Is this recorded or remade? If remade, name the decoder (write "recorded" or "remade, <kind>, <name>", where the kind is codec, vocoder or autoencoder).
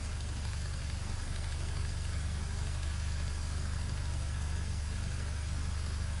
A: remade, codec, SNAC